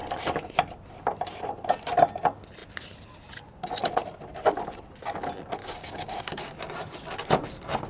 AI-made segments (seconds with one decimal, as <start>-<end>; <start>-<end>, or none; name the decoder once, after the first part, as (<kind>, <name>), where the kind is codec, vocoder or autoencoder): 5.6-6.5 (codec, DAC)